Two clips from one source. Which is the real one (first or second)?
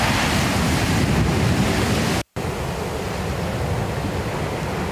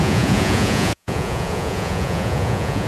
first